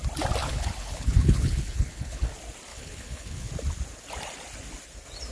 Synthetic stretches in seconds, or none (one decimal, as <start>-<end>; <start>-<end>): 0.4-2.3; 2.7-3.5

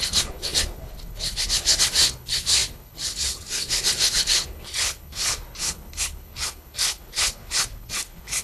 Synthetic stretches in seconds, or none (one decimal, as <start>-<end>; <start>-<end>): 0.0-8.4

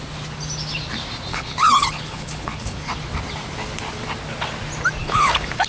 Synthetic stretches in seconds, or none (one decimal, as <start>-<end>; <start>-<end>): 1.3-2.9; 5.0-5.7